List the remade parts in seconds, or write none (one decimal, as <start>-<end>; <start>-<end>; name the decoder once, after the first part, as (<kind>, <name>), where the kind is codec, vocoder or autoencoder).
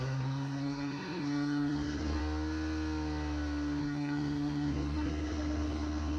0.0-2.2 (codec, SNAC); 3.8-6.2